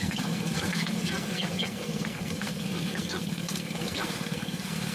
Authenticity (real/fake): fake